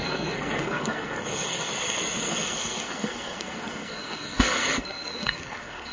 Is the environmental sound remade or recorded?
remade